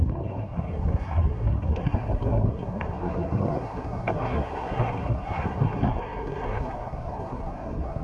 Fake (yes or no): yes